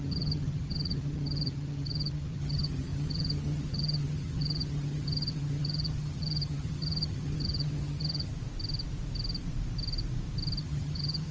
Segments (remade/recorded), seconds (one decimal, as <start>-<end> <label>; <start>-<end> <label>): 0.0-8.3 remade; 8.3-10.6 recorded; 10.6-11.3 remade